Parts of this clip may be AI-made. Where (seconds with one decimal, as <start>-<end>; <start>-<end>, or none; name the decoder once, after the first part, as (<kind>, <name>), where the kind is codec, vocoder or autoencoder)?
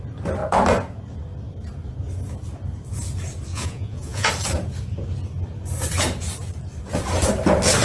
3.5-4.3 (vocoder, Vocos)